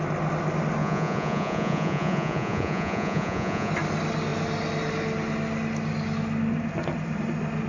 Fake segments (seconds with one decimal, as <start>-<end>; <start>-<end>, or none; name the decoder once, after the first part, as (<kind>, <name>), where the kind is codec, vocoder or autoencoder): 0.8-3.7 (vocoder, Vocos)